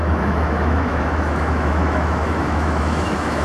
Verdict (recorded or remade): remade